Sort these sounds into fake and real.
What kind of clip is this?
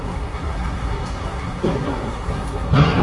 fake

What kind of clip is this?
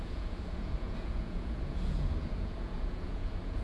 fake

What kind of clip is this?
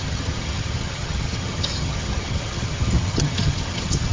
fake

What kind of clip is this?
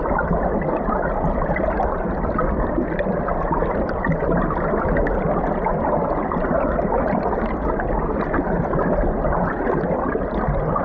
real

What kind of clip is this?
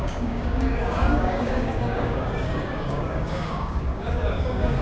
fake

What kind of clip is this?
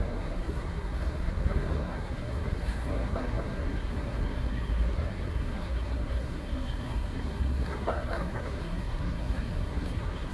fake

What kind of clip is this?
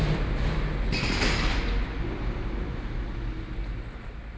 real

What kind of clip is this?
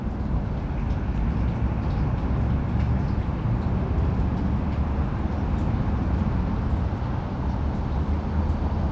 real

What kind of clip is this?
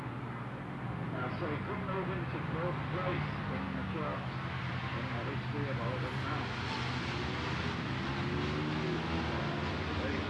real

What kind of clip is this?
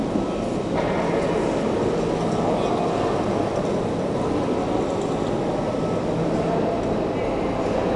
real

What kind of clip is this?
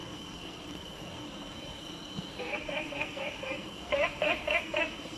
fake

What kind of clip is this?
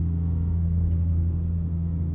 fake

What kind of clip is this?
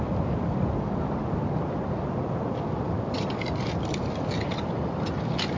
real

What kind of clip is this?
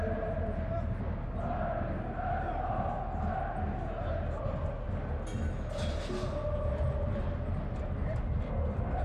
real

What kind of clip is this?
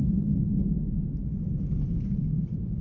real